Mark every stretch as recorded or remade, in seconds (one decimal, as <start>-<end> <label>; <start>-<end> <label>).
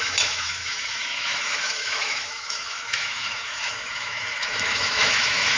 0.0-5.6 remade